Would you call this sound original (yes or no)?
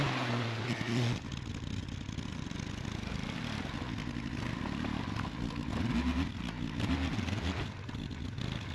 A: yes